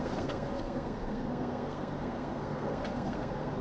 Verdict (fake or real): fake